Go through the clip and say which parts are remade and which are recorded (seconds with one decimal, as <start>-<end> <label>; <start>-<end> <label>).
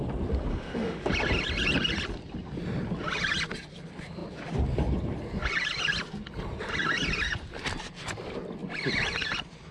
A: 0.0-0.5 recorded; 0.5-1.1 remade; 1.1-9.7 recorded